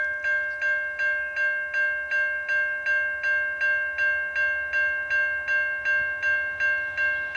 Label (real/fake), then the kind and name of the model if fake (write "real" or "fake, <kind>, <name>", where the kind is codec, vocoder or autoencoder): real